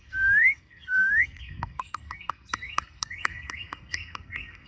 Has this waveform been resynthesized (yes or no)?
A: yes